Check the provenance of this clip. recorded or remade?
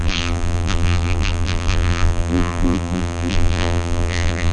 remade